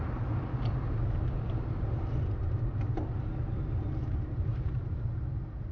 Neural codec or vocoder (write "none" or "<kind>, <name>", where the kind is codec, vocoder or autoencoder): vocoder, BigVGAN v2